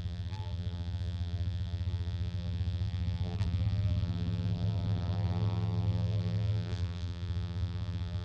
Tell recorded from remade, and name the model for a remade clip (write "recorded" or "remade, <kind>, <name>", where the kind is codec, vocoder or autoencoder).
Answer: remade, vocoder, BigVGAN v2